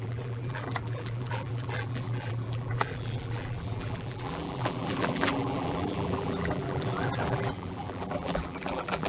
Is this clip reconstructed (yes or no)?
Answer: yes